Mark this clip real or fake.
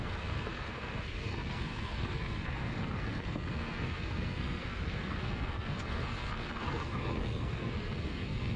fake